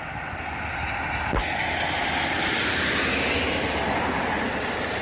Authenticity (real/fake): real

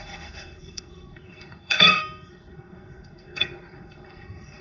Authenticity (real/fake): fake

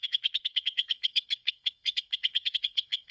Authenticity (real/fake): fake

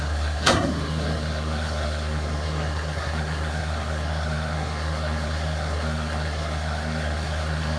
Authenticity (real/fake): fake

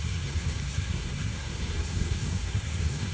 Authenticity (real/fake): fake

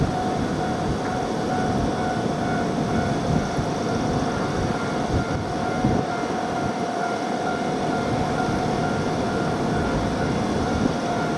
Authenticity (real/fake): real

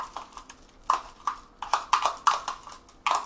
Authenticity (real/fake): real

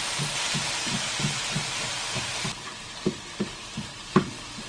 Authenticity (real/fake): real